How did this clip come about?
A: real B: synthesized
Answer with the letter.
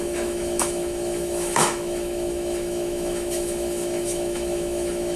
B